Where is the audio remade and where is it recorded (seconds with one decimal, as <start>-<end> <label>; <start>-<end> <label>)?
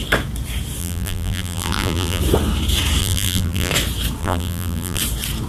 0.0-0.8 recorded; 0.8-2.2 remade; 2.2-3.0 recorded; 3.0-3.7 remade; 3.7-4.2 recorded; 4.2-5.0 remade; 5.0-5.5 recorded